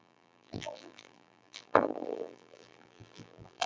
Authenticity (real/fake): fake